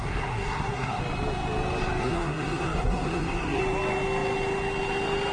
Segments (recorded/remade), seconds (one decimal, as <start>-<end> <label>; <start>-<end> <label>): 0.0-1.0 remade; 1.0-2.0 recorded; 2.0-3.6 remade; 3.6-5.3 recorded